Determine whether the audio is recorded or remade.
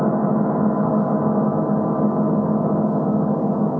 remade